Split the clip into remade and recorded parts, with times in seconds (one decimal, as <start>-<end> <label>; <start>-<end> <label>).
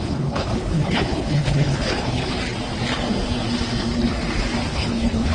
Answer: 0.0-2.3 remade; 2.3-4.7 recorded; 4.7-5.3 remade